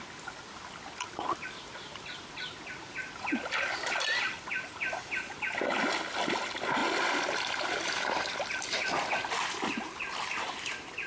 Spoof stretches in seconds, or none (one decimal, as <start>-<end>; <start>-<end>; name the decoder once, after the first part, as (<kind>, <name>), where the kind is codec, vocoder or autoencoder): none